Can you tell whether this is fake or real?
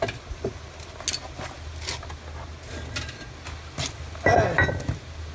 real